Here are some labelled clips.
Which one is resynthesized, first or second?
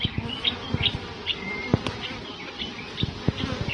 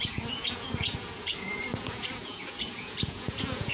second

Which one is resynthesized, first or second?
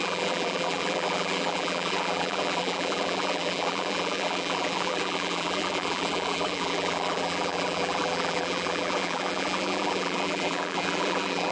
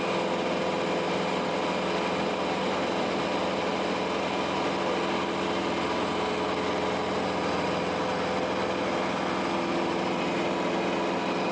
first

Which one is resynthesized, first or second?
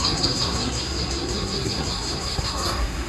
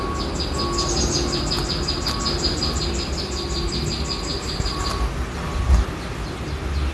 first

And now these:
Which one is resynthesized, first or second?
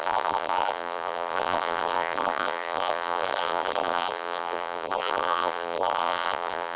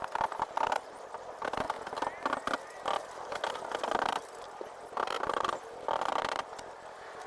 first